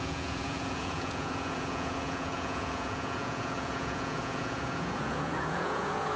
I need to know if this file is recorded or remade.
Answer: remade